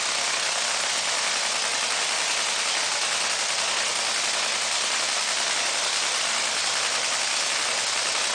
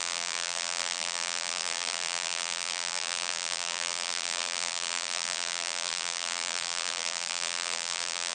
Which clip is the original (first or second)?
first